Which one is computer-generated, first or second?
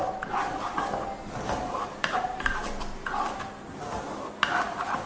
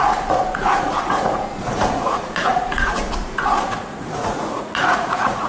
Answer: second